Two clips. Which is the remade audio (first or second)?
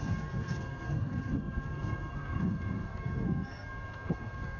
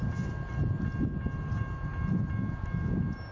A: first